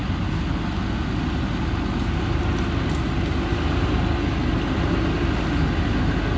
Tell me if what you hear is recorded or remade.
recorded